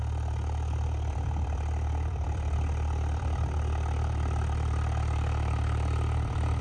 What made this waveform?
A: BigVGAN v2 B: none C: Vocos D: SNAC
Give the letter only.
A